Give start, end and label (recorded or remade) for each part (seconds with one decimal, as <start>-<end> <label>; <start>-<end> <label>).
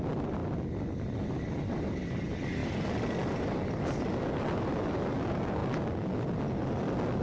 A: 0.0-7.2 recorded